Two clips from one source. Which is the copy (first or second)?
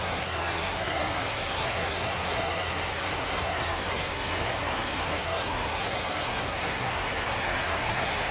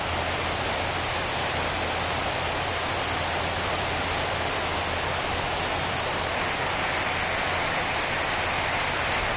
first